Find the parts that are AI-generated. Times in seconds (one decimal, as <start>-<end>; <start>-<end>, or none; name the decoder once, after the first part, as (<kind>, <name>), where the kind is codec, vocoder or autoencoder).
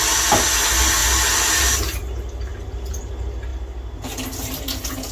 1.0-1.6 (vocoder, BigVGAN v2); 2.5-3.0